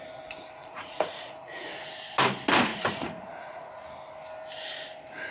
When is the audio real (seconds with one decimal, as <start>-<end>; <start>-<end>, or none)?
0.0-0.6; 1.8-2.7; 3.7-5.3